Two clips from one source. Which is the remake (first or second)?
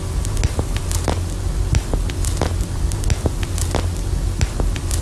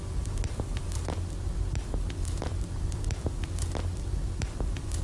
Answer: second